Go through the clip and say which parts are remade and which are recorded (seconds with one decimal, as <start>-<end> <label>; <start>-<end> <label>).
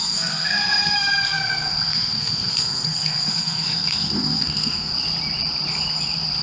0.0-4.9 remade; 4.9-6.4 recorded